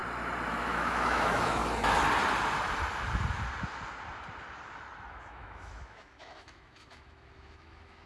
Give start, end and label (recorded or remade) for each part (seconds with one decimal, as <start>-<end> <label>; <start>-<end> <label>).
0.0-0.5 recorded; 0.5-1.6 remade; 1.6-5.2 recorded; 5.2-8.1 remade